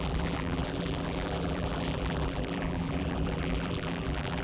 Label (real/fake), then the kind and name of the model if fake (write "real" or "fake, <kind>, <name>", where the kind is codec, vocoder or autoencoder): fake, vocoder, BigVGAN v2